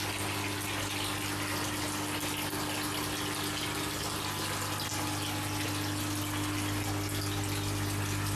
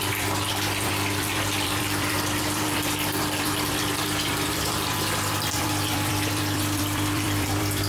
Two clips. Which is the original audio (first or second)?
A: first